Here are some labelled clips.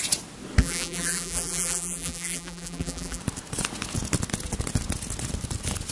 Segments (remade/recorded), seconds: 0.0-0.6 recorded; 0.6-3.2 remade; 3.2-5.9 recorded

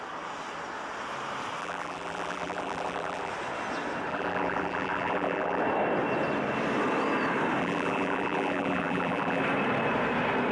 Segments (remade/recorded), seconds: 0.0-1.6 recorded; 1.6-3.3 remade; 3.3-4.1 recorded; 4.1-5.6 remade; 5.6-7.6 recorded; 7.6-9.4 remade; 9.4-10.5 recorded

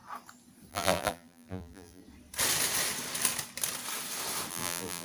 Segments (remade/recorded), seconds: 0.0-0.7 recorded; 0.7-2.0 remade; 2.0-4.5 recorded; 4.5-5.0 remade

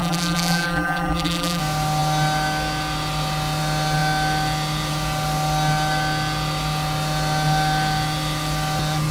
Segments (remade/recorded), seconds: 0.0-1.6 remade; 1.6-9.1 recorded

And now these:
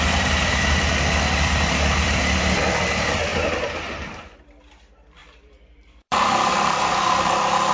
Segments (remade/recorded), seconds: 0.0-5.2 recorded; 5.2-6.9 remade; 6.9-7.7 recorded

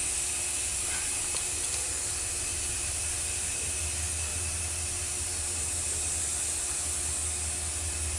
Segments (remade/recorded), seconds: 0.0-4.3 recorded; 4.3-6.7 remade; 6.7-8.2 recorded

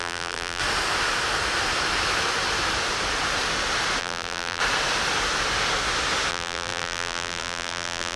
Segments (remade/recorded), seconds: 0.0-0.6 remade; 0.6-4.0 recorded; 4.0-4.6 remade; 4.6-6.3 recorded; 6.3-8.2 remade

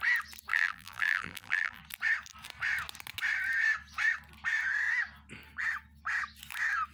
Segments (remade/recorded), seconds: 0.0-0.5 recorded; 0.5-1.8 remade; 1.8-6.9 recorded